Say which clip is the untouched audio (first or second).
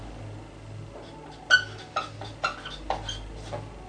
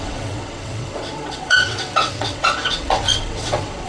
first